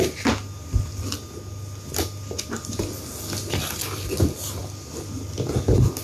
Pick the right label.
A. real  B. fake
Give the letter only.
A